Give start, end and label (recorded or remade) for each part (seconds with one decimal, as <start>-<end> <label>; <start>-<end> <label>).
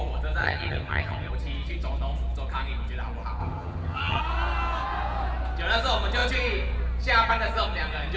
0.0-0.4 recorded; 0.4-1.3 remade; 1.3-3.4 recorded; 3.4-4.2 remade; 4.2-8.2 recorded